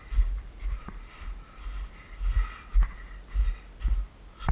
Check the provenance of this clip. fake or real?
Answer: real